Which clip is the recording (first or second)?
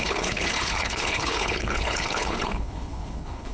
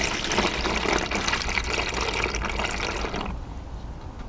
second